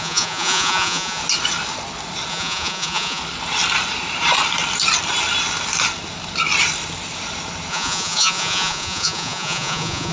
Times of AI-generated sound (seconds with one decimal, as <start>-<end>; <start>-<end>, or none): 0.0-1.2; 2.3-3.2; 7.7-10.1